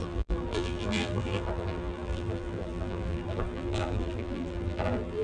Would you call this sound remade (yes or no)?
yes